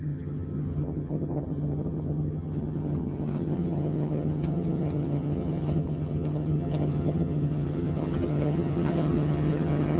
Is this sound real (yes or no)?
no